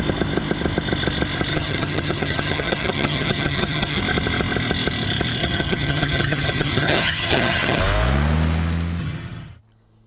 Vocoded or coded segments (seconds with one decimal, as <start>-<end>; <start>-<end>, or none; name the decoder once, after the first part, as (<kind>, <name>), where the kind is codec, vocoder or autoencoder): 1.5-4.0 (vocoder, HiFi-GAN); 5.4-7.8; 9.0-9.6